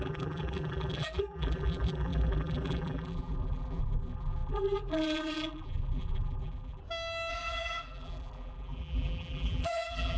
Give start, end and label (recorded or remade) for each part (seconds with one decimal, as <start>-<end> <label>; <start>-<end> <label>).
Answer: 0.0-6.8 remade; 6.8-7.3 recorded; 7.3-10.2 remade

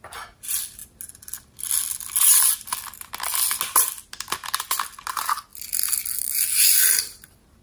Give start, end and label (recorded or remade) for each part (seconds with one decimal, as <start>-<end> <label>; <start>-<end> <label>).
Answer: 0.0-7.6 recorded